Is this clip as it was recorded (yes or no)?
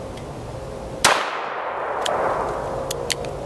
yes